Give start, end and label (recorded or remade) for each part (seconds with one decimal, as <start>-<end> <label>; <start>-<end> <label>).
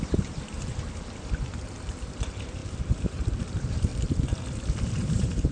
0.0-0.7 remade; 0.7-1.8 recorded; 1.8-3.9 remade; 3.9-4.8 recorded; 4.8-5.5 remade